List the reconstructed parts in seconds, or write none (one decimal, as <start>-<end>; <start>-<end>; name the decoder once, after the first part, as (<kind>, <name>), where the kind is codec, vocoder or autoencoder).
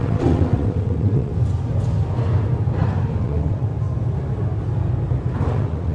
0.0-1.3 (vocoder, WaveNeXt); 3.2-3.7; 5.5-5.9